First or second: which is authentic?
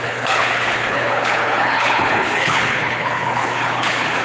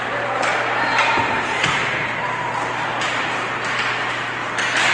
second